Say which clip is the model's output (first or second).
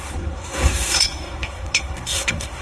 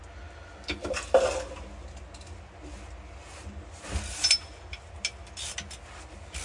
first